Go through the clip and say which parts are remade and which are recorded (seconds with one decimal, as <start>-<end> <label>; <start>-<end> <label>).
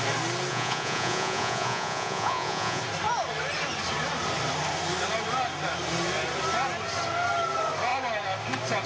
0.0-0.5 recorded; 0.5-2.8 remade; 2.8-8.9 recorded